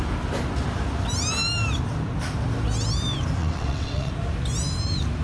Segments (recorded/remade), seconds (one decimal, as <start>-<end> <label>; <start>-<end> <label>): 0.0-3.4 recorded; 3.4-4.1 remade; 4.1-5.2 recorded